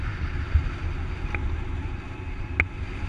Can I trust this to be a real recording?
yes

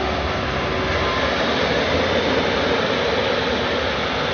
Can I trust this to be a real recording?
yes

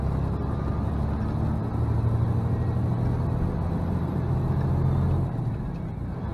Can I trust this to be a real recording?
yes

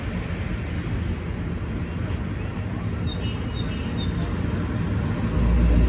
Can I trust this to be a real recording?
yes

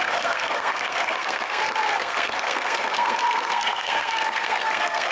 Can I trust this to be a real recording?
no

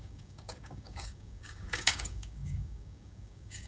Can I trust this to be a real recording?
no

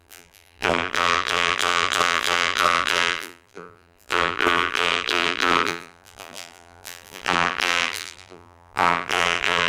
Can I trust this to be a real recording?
no